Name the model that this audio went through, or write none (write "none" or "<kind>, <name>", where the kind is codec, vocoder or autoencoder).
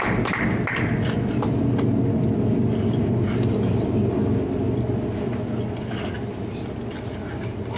none